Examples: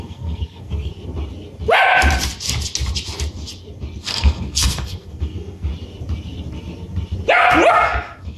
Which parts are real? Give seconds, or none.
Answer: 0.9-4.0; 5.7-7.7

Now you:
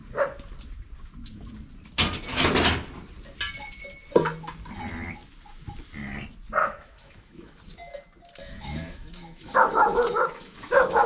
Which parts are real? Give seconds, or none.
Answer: 0.0-6.6; 7.6-8.4